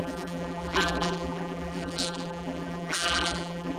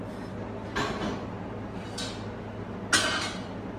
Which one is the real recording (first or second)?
second